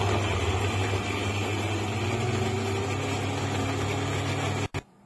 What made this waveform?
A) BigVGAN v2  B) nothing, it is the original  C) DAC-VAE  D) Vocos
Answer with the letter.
B